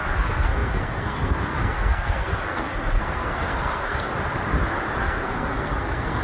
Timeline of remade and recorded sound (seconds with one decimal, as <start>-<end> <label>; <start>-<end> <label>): 0.0-4.1 remade; 4.1-5.0 recorded; 5.0-6.2 remade

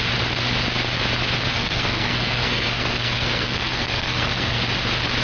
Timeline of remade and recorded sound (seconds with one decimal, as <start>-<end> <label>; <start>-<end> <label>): 0.0-1.5 recorded; 1.5-4.6 remade; 4.6-5.2 recorded